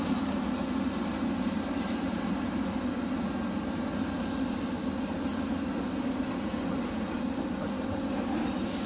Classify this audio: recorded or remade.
recorded